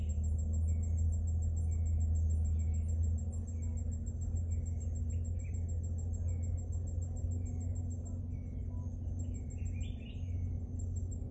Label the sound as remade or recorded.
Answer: recorded